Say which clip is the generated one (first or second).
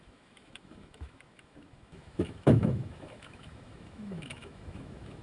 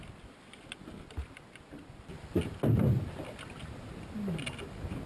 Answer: first